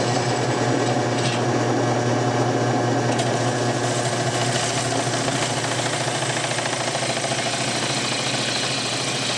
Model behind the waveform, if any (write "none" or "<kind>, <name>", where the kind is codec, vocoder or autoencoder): none